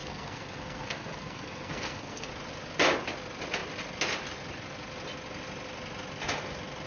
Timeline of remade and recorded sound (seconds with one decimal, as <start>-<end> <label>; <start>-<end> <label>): 0.0-2.3 remade; 2.3-6.9 recorded